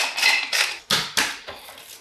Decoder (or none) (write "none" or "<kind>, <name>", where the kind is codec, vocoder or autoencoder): none